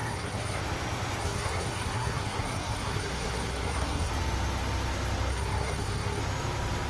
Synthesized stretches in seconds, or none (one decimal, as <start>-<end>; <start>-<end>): 0.0-0.6; 1.2-4.1; 5.3-6.2